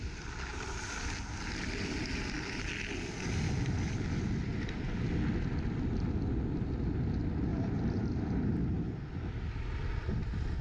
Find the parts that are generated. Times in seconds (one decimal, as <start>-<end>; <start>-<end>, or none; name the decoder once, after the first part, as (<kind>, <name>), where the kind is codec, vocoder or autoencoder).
7.5-8.5 (vocoder, BigVGAN v2)